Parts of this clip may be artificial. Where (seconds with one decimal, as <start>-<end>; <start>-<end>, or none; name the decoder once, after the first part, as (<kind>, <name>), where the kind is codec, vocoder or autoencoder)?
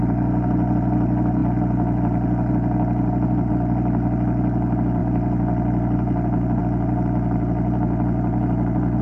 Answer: 1.4-3.5 (vocoder, BigVGAN v2); 5.0-6.6